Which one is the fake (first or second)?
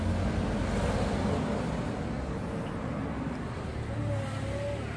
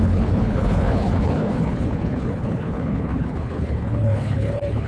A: second